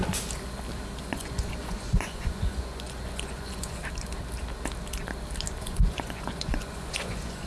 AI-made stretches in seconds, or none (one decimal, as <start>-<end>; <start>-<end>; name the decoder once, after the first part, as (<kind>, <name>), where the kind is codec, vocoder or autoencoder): 1.0-3.8 (vocoder, Vocos); 5.6-7.5